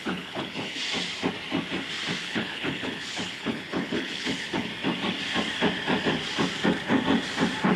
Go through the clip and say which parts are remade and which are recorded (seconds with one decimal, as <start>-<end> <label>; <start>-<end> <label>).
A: 0.0-0.8 remade; 0.8-2.2 recorded; 2.2-4.7 remade; 4.7-7.8 recorded